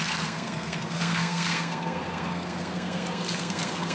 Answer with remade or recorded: remade